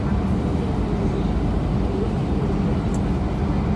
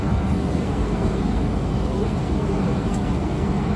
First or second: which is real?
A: first